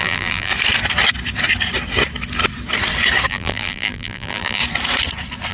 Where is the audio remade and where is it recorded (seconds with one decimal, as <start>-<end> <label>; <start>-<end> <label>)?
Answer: 0.0-0.5 remade; 0.5-3.3 recorded; 3.3-4.6 remade; 4.6-5.5 recorded